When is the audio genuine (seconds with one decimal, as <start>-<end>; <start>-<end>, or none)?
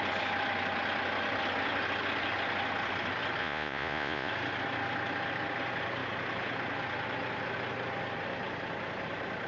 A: 0.0-3.4; 4.3-9.5